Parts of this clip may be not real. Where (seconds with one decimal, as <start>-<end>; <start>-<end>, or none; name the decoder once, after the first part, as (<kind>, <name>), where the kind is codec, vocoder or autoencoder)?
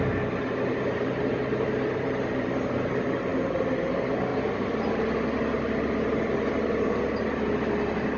none